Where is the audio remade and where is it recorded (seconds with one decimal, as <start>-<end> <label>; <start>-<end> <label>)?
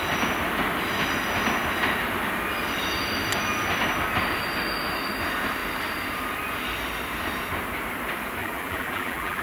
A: 0.0-8.4 recorded; 8.4-9.4 remade